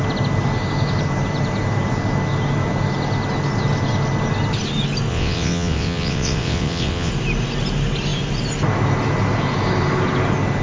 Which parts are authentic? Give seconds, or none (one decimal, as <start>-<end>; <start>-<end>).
0.0-5.1; 7.1-10.6